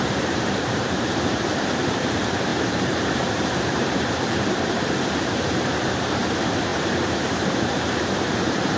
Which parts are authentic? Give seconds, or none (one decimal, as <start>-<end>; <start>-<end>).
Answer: none